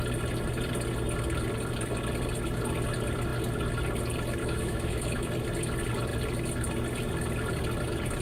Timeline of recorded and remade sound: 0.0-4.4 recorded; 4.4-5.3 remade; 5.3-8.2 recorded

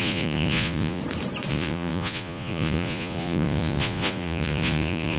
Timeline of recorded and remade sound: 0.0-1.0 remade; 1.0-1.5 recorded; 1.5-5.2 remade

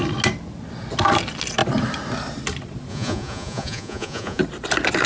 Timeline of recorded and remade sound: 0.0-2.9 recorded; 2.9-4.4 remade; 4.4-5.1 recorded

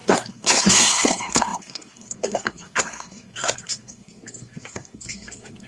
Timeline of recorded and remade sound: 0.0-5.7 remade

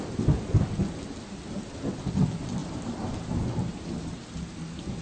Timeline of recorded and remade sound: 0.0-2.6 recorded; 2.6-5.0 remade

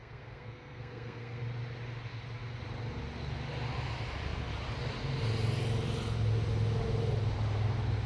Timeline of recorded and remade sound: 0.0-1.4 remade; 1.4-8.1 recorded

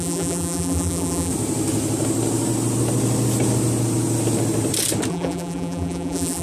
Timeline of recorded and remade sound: 0.0-1.3 remade; 1.3-5.1 recorded; 5.1-6.4 remade

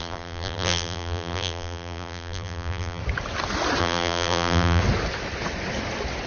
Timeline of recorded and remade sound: 0.0-3.0 remade; 3.0-3.8 recorded; 3.8-4.8 remade; 4.8-6.3 recorded